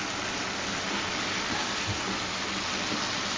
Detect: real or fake real